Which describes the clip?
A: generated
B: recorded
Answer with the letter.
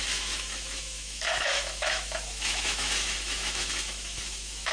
A